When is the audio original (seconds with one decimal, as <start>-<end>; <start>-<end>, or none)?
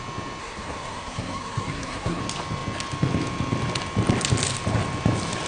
0.0-0.4; 2.2-5.5